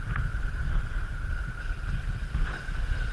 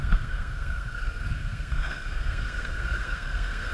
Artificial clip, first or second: second